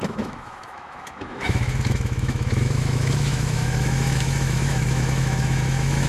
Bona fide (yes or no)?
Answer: no